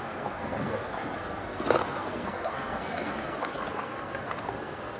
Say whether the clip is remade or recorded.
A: remade